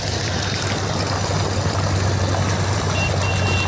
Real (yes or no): no